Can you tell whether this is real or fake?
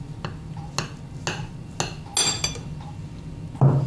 real